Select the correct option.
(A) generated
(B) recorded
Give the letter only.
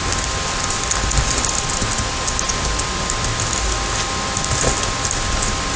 B